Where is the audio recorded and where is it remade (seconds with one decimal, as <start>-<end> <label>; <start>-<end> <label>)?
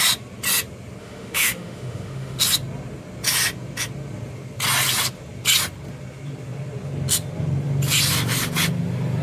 0.0-1.0 recorded; 1.0-2.4 remade; 2.4-9.2 recorded